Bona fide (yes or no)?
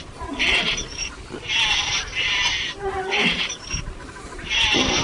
no